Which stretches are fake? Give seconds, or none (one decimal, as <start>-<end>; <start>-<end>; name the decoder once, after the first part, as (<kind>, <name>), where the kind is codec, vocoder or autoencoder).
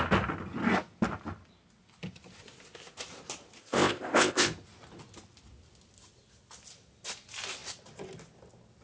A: 3.6-4.5 (codec, ZipCodec)